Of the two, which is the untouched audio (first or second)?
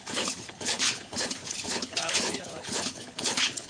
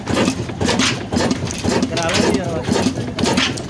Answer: second